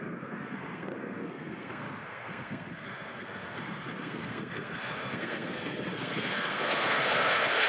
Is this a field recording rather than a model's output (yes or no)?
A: no